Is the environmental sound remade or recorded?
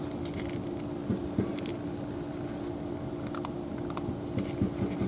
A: recorded